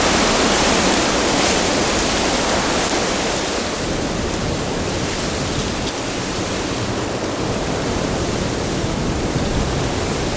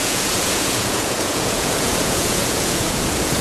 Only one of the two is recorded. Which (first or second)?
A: first